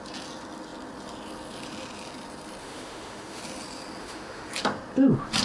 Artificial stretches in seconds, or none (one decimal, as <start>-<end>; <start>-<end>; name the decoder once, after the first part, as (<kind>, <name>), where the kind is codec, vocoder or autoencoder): 2.6-3.4 (autoencoder, DAC-VAE); 4.0-4.5

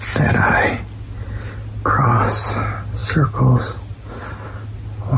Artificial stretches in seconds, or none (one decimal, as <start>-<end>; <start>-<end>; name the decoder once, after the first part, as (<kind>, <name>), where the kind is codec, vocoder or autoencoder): none

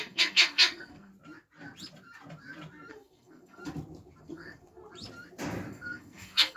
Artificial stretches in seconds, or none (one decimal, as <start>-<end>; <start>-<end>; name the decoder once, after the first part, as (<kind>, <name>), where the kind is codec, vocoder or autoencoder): 0.0-1.1 (codec, SNAC); 2.9-3.6; 4.2-4.8; 5.7-6.6

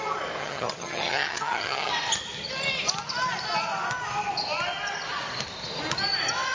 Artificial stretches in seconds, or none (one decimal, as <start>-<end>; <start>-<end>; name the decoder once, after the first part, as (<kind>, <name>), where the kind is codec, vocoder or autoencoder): 0.4-1.9 (vocoder, HiFi-GAN)

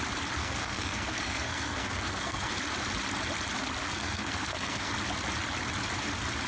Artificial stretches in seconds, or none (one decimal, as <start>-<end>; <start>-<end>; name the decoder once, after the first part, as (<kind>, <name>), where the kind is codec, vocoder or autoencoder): 0.4-2.5 (codec, SNAC); 3.8-4.9

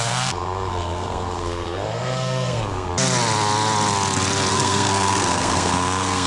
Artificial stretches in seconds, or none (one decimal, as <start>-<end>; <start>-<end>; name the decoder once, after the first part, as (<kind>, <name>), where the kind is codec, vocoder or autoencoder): 0.0-2.9 (codec, SNAC); 4.5-6.3

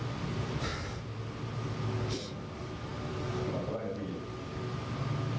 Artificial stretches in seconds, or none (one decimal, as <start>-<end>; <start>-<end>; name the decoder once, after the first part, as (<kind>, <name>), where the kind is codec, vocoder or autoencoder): none